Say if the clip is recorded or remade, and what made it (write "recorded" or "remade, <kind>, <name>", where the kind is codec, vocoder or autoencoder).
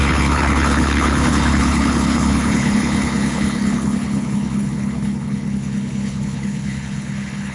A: remade, codec, HILCodec